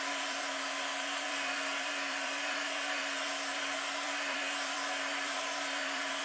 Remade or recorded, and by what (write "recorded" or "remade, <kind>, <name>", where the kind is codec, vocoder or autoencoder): remade, vocoder, BigVGAN v2